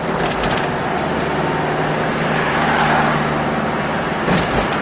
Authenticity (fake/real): real